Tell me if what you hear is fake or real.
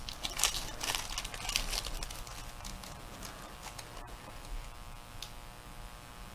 real